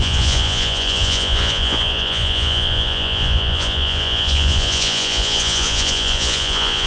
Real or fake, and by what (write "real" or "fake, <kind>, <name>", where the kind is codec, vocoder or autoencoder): fake, vocoder, Vocos